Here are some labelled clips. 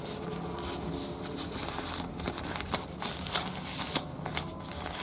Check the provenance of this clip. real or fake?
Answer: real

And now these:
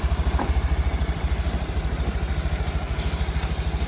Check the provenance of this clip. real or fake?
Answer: fake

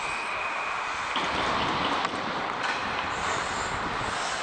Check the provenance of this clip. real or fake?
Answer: real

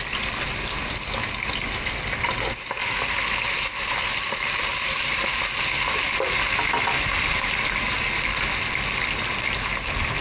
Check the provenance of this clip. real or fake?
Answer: real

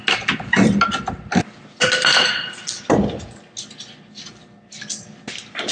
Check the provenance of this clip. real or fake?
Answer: real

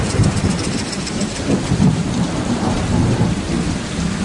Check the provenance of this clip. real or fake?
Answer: fake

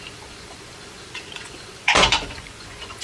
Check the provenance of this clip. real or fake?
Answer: fake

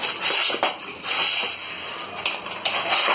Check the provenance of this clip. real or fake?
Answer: fake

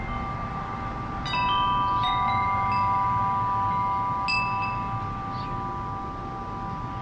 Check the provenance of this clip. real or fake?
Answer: real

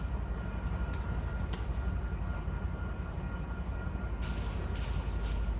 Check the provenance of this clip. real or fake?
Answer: real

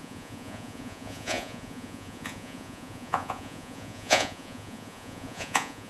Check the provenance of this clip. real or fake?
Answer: fake